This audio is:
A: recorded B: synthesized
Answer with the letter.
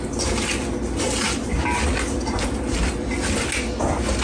A